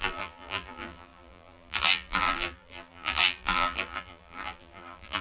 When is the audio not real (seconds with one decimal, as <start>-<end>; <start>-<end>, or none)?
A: 0.0-5.2